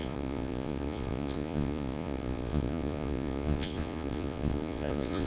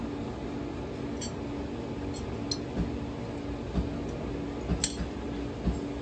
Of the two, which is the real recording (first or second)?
second